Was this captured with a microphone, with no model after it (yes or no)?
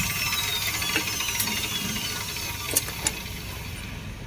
yes